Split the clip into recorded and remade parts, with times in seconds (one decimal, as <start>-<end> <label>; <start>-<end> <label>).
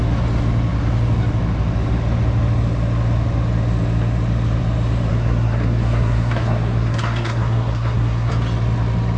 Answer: 0.0-5.1 recorded; 5.1-8.3 remade; 8.3-9.2 recorded